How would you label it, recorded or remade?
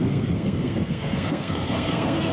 remade